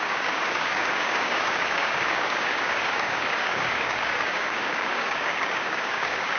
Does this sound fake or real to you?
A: fake